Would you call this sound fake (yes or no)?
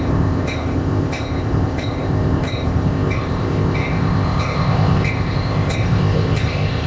yes